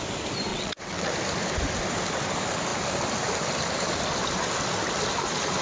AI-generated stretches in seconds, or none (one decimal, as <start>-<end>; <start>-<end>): 0.5-1.1